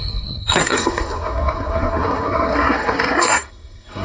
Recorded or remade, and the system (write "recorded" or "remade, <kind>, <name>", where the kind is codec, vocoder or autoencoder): remade, codec, SNAC